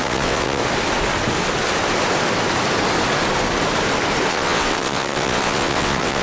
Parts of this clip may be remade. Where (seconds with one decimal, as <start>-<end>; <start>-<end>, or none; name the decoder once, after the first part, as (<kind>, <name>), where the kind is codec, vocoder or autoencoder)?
0.0-0.6 (vocoder, WaveNeXt); 4.3-6.2

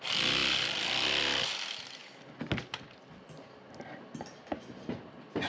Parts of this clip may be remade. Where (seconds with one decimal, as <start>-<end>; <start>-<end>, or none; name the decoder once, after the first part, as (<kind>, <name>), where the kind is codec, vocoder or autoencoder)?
none

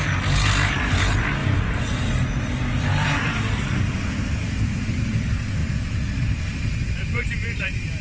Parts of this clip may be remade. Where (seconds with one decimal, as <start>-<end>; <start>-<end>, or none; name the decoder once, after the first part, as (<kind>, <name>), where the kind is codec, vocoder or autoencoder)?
none

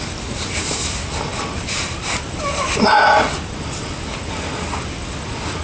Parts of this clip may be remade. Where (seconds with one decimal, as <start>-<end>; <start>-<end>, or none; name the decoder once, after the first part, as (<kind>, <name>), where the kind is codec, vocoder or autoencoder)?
none

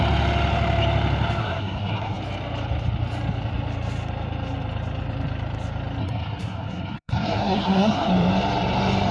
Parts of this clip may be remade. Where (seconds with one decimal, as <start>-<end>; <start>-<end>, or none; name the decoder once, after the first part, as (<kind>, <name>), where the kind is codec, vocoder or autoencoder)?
1.4-2.2 (codec, SNAC); 6.0-8.1